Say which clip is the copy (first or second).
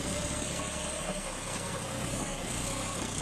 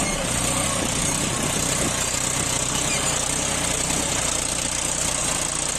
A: first